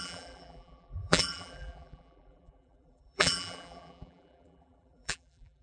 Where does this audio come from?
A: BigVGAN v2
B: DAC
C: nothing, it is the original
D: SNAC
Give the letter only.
A